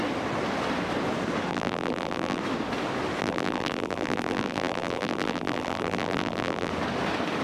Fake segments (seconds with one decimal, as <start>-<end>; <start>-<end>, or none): 1.5-2.4; 3.2-6.7